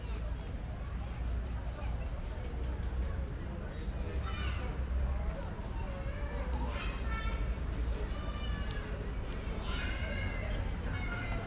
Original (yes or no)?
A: yes